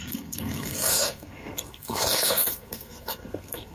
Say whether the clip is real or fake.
fake